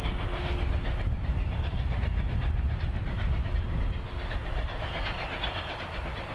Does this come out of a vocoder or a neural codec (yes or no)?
no